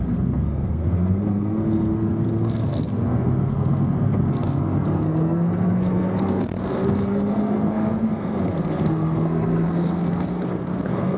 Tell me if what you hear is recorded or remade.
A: remade